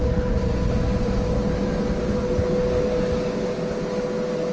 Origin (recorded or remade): recorded